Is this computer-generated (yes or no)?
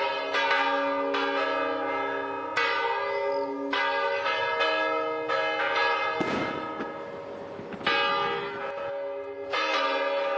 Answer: no